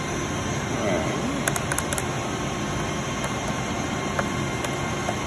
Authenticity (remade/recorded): recorded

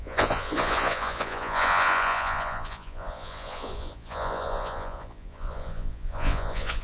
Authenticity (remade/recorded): remade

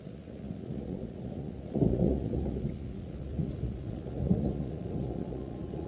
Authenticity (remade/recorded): remade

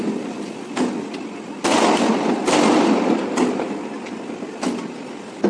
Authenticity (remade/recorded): recorded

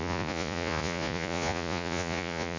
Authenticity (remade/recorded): remade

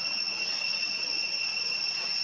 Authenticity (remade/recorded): recorded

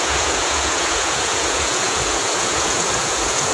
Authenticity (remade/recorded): remade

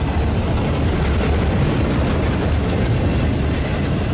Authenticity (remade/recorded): recorded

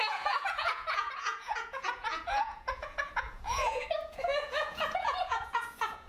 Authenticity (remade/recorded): remade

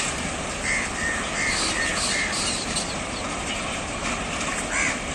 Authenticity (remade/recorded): recorded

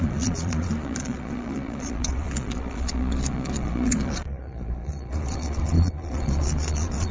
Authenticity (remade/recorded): remade